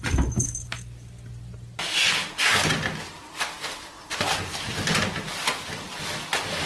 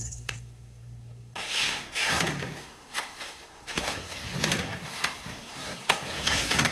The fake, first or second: second